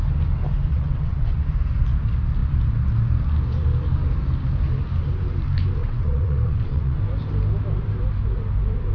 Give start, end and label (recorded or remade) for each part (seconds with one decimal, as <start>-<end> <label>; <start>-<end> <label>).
0.0-0.7 recorded; 0.7-1.4 remade; 1.4-5.8 recorded; 5.8-7.0 remade; 7.0-8.9 recorded